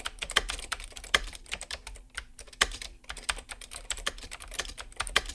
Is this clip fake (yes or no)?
yes